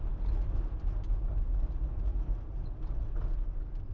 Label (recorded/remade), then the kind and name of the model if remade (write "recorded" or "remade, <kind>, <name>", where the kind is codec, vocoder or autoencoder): recorded